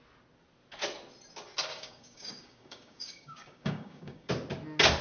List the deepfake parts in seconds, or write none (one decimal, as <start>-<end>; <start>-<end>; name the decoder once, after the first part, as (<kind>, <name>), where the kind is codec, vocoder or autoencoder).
1.7-4.3 (codec, DAC)